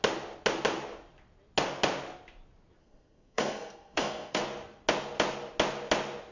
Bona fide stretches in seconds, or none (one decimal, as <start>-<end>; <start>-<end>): 0.0-2.8; 4.4-6.3